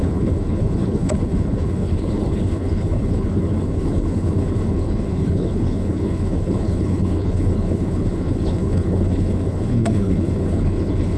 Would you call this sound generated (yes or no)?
yes